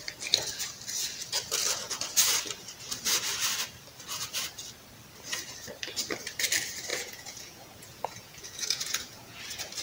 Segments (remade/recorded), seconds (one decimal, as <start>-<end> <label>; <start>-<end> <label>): 0.0-6.9 recorded; 6.9-9.4 remade; 9.4-9.8 recorded